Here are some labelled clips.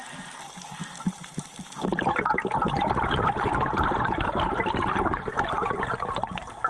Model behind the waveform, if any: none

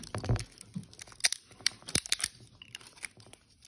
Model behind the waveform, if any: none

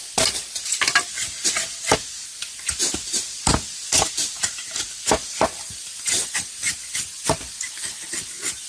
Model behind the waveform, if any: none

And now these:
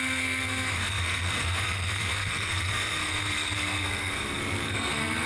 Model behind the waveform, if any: codec, SNAC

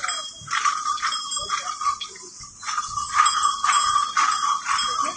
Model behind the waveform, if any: none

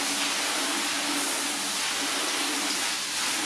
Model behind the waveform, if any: none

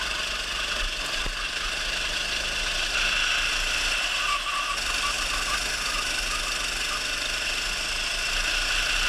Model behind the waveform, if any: none